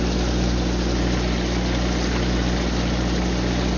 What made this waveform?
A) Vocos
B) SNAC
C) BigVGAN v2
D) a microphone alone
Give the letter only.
D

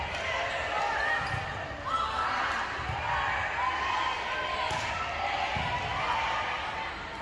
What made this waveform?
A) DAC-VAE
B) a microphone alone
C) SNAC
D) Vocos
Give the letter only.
B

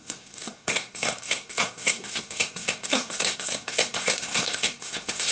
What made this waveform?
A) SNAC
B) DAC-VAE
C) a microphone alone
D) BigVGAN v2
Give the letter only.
A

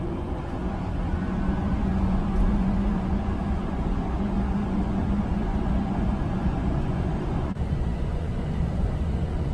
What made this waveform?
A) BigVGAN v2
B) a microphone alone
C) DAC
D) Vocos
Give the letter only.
D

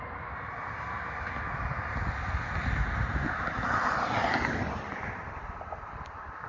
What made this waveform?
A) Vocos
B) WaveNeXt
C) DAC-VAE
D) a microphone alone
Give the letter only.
D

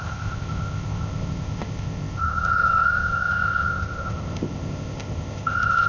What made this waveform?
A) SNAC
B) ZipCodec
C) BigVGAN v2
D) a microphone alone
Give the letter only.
B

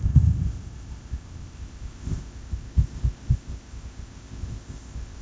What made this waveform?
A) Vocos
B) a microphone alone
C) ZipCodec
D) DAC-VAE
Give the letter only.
C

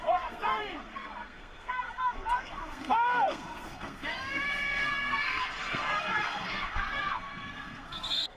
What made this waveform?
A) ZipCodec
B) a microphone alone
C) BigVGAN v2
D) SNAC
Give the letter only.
D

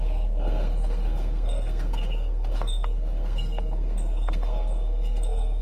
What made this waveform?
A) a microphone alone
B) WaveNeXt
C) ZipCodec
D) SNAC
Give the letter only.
D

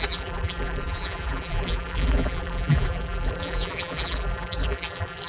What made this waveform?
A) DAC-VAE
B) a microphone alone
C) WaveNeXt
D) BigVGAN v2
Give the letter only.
D